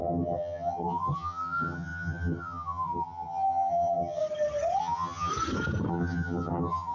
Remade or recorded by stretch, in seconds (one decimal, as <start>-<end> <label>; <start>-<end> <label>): 0.0-4.2 remade; 4.2-4.8 recorded; 4.8-5.3 remade; 5.3-5.9 recorded; 5.9-6.9 remade